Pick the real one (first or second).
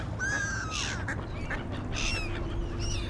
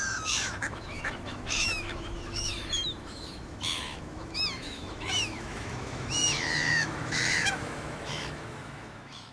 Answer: first